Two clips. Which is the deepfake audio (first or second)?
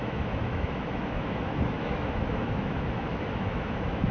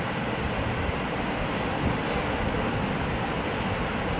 first